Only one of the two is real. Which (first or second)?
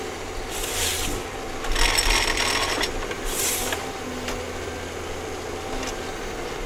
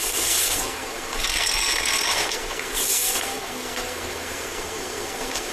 first